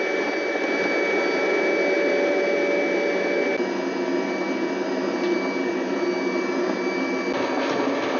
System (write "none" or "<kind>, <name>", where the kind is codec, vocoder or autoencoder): none